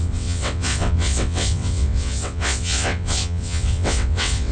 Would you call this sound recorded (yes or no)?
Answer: no